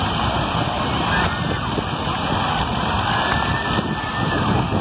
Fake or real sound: real